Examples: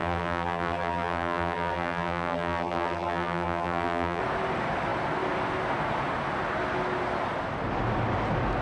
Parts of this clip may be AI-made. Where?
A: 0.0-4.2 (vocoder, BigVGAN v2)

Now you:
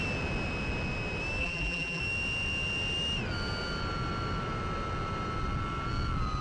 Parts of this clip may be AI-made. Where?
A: 1.4-2.0 (vocoder, BigVGAN v2)

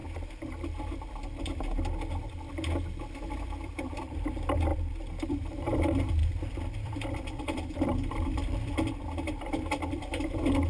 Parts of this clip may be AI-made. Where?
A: 3.4-10.7 (vocoder, BigVGAN v2)

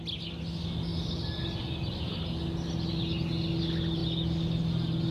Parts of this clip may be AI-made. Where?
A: none

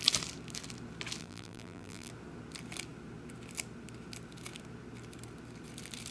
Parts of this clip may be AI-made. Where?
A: 1.2-2.1 (vocoder, BigVGAN v2)